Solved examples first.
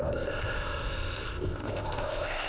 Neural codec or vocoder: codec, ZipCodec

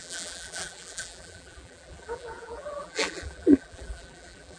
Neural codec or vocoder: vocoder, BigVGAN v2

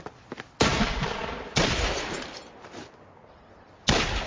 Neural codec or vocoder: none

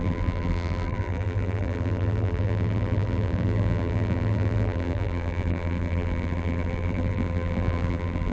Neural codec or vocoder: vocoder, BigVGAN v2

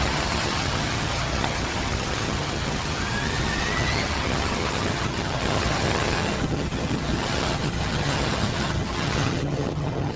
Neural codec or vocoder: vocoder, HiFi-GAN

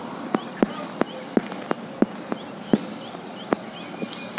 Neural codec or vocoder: none